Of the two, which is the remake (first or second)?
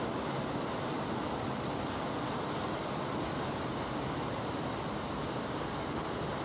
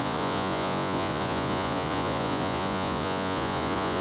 second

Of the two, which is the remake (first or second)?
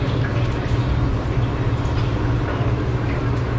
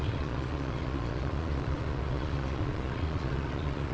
second